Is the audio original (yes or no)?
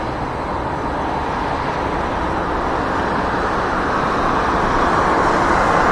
yes